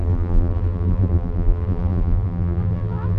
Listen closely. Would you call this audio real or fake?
fake